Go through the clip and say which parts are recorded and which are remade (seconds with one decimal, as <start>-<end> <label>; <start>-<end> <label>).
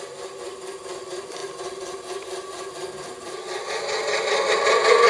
0.0-5.1 recorded